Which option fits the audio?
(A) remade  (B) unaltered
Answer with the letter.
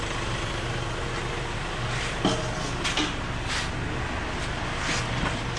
B